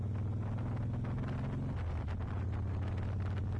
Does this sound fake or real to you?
real